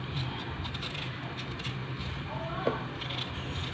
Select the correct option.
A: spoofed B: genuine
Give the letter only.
B